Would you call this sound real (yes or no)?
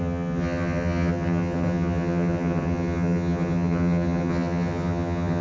no